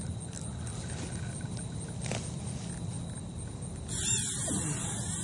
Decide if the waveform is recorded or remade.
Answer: recorded